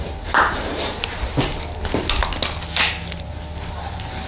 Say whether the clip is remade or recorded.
recorded